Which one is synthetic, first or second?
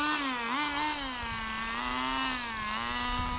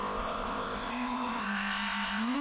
second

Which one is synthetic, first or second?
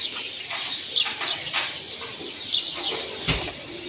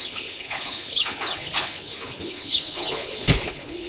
second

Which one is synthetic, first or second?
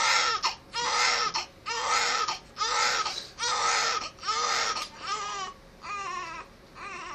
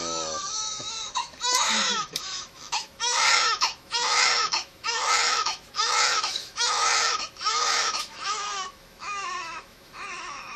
second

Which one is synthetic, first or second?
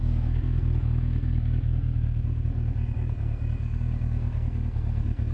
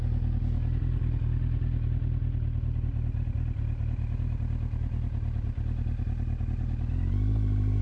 first